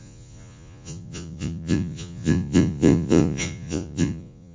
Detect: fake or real fake